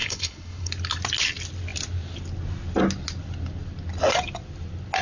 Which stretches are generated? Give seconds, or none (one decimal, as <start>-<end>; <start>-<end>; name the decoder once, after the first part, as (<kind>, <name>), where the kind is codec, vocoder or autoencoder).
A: 0.0-0.7 (codec, HILCodec)